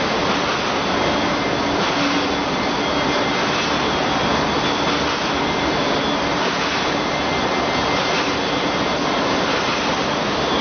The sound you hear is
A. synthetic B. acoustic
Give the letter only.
B